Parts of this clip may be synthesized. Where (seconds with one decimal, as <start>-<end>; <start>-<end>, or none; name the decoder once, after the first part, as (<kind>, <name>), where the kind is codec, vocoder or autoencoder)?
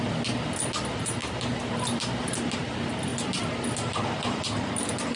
none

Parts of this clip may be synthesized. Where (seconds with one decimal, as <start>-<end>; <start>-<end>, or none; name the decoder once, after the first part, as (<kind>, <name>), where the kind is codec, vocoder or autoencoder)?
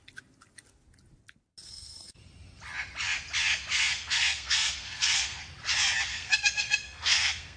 1.6-2.2 (codec, SNAC); 3.7-5.4; 6.1-7.6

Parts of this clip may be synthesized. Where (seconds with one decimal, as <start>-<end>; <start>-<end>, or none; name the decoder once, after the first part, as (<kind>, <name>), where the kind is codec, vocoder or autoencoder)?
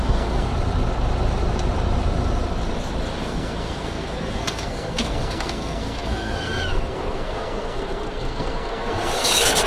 0.0-0.5 (codec, SNAC); 3.2-9.7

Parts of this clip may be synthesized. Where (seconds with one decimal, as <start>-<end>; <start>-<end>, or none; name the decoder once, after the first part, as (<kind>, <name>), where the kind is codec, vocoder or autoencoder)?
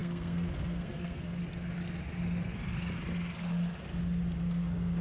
0.0-1.4 (codec, SNAC); 4.4-5.0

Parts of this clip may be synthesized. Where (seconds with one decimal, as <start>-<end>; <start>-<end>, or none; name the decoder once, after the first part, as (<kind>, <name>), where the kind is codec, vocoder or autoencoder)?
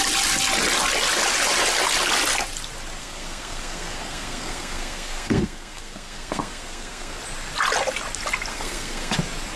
3.0-7.2 (codec, SNAC); 8.5-9.1